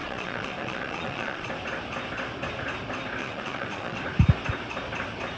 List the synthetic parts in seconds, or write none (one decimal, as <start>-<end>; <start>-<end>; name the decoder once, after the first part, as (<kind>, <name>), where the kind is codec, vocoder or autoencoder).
0.0-1.5 (vocoder, Vocos); 3.2-4.0